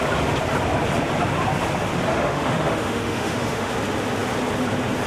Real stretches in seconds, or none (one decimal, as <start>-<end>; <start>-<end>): 0.0-2.1; 3.7-5.1